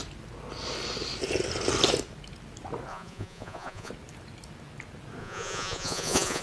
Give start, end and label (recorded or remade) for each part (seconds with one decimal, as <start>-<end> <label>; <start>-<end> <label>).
0.0-2.9 recorded; 2.9-3.9 remade; 3.9-5.2 recorded; 5.2-6.4 remade

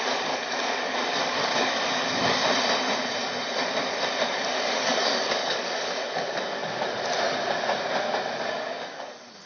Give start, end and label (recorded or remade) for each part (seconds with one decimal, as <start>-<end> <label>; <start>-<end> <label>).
0.0-2.4 remade; 2.4-4.6 recorded; 4.6-6.6 remade; 6.6-8.4 recorded; 8.4-9.5 remade